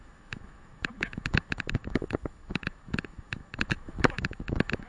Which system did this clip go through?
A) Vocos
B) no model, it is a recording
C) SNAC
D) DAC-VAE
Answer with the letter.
D